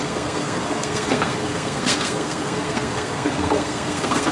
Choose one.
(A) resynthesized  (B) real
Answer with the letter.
A